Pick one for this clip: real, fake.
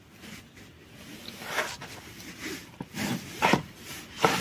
real